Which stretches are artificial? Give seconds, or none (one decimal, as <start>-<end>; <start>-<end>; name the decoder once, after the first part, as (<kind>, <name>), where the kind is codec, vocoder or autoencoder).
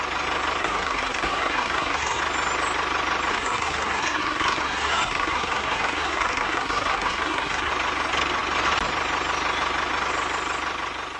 0.6-2.2 (codec, SNAC); 3.3-7.7